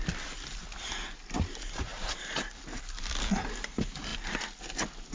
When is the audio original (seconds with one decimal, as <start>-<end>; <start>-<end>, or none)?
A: 0.0-5.1